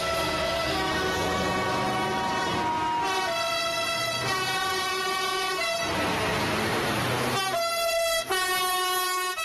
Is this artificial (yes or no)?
no